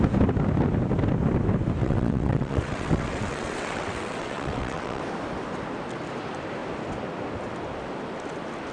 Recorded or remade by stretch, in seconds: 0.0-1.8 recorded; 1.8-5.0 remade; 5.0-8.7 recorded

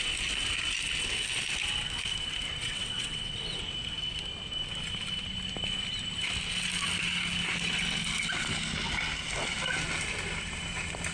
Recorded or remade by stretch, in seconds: 0.0-2.6 recorded; 2.6-3.6 remade; 3.6-11.1 recorded

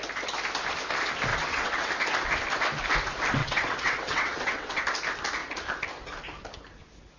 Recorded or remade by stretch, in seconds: 0.0-1.3 recorded; 1.3-1.9 remade; 1.9-3.4 recorded; 3.4-4.8 remade; 4.8-7.2 recorded

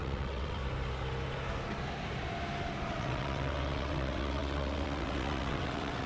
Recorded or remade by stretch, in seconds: 0.0-0.6 remade; 0.6-2.9 recorded; 2.9-6.1 remade